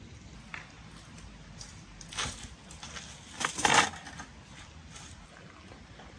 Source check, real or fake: real